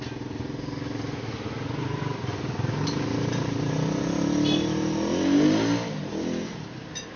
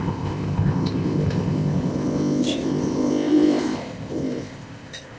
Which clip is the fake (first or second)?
second